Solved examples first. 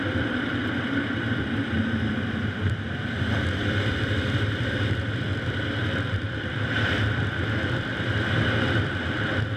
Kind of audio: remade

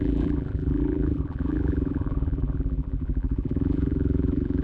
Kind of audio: remade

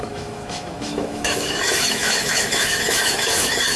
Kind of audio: remade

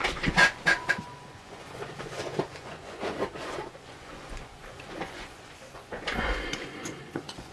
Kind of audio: remade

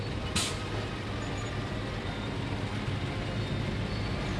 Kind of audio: recorded